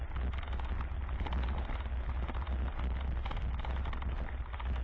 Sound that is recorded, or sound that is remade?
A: recorded